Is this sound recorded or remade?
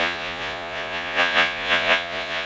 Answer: remade